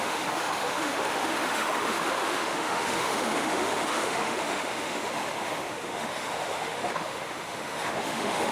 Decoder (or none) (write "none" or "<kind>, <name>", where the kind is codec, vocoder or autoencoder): autoencoder, DAC-VAE